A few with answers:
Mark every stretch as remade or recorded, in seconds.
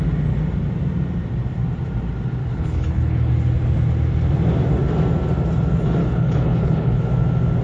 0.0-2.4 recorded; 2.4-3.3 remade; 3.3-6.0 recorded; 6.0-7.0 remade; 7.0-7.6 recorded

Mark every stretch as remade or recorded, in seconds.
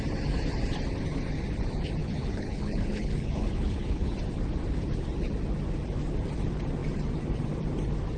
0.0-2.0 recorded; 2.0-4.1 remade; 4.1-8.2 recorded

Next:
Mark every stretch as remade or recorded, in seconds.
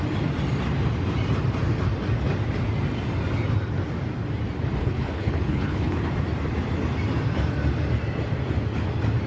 0.0-4.8 recorded; 4.8-6.1 remade; 6.1-9.3 recorded